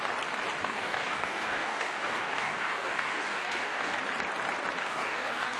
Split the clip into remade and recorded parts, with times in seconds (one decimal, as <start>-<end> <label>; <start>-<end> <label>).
0.0-0.6 recorded; 0.6-4.0 remade; 4.0-4.8 recorded; 4.8-5.6 remade